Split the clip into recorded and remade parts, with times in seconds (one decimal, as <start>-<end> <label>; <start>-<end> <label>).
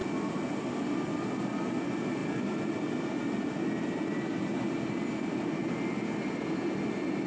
0.0-1.4 recorded; 1.4-7.3 remade